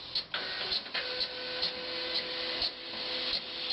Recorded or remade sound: recorded